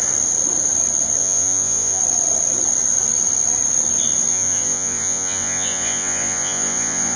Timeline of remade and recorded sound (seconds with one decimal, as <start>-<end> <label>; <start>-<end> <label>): 0.0-1.2 recorded; 1.2-2.0 remade; 2.0-4.3 recorded; 4.3-7.2 remade